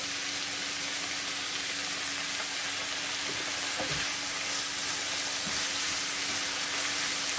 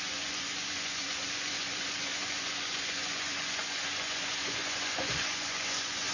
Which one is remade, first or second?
second